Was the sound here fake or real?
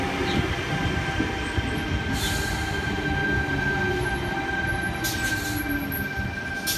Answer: real